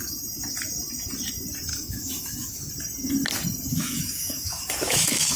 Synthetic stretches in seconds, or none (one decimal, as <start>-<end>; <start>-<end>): 1.7-2.7; 3.7-5.4